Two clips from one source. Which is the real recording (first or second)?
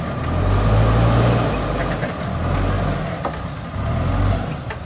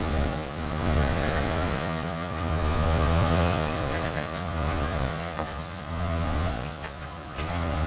first